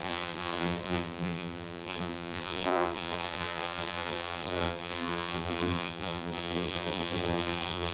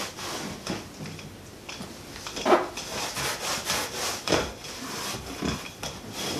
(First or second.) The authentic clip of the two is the second